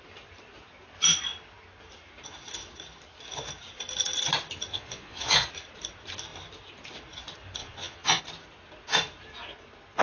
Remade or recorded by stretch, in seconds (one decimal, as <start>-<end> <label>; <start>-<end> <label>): 0.0-4.7 recorded; 4.7-5.5 remade; 5.5-7.6 recorded; 7.6-8.2 remade; 8.2-10.0 recorded